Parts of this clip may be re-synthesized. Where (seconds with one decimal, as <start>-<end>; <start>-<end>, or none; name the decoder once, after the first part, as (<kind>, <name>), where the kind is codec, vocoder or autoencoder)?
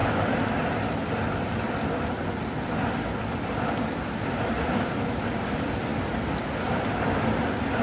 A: none